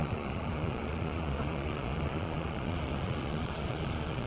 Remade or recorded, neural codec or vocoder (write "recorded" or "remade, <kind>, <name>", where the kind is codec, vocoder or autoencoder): remade, vocoder, Vocos